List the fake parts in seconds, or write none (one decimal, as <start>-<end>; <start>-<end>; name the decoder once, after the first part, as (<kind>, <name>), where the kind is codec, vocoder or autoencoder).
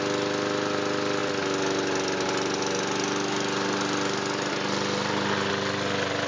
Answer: none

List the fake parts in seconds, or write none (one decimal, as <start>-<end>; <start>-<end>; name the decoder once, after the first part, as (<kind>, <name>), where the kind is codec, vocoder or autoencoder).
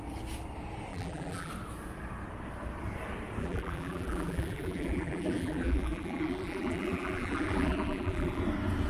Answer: 0.9-1.5 (vocoder, BigVGAN v2); 3.4-8.4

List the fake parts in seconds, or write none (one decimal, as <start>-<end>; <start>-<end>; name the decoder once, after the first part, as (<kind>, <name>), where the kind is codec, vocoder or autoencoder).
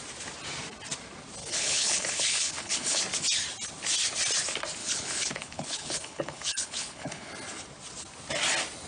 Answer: 1.4-3.0 (codec, HILCodec); 4.8-7.3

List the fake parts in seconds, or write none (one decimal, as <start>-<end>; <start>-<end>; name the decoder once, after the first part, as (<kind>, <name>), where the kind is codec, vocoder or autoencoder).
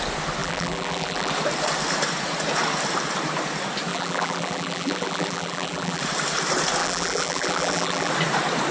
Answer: 0.4-1.3 (vocoder, BigVGAN v2); 3.9-6.0; 6.8-8.1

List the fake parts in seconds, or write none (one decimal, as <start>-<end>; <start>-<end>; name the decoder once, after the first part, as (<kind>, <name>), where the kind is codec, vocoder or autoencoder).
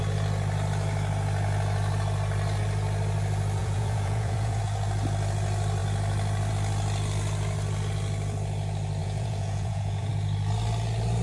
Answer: 3.6-4.6 (vocoder, Vocos); 9.0-10.1